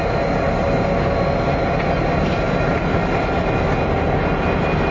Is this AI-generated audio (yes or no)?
no